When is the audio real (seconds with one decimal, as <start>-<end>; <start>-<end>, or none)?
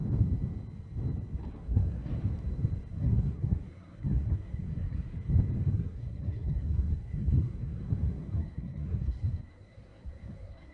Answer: 0.0-1.5; 2.1-2.9; 5.1-5.7